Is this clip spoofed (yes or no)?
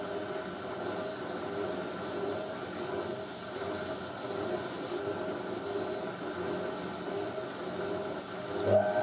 no